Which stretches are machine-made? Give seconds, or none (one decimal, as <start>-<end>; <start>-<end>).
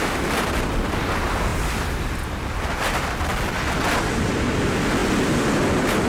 none